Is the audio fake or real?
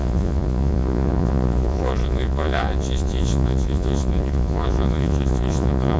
fake